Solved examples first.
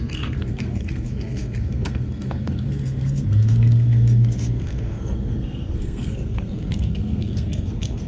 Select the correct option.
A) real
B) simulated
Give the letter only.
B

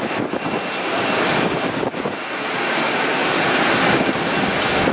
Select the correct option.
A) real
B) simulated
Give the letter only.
A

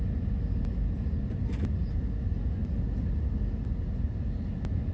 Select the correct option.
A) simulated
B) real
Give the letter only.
B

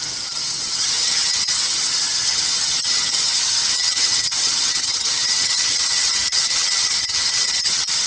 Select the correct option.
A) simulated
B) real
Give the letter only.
A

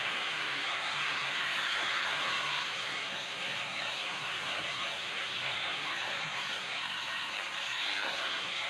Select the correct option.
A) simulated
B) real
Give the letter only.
A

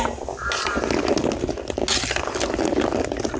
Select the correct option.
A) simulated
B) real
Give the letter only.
B